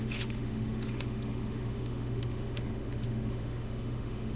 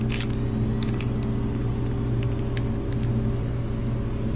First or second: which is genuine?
second